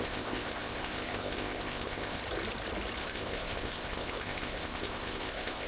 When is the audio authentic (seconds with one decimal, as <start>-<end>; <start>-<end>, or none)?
2.2-3.0